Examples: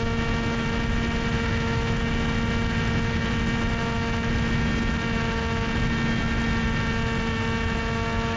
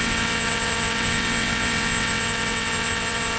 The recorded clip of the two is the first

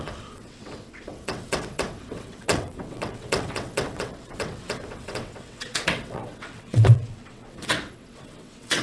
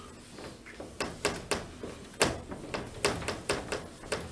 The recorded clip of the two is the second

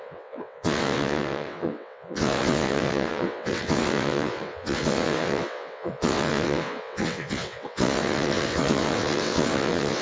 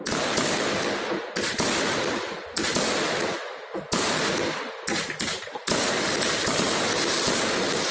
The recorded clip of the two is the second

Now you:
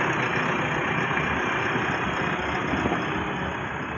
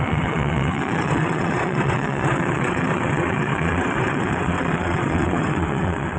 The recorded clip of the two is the first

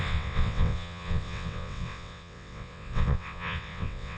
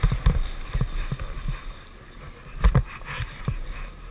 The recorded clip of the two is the second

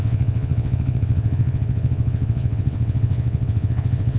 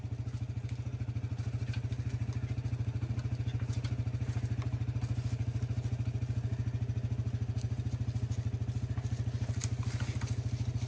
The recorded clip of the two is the second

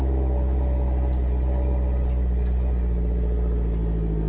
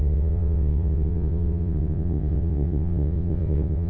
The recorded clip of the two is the first